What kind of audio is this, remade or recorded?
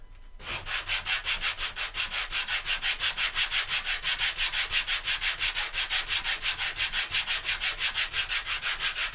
recorded